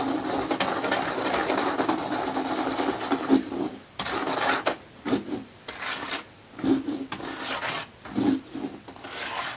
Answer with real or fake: real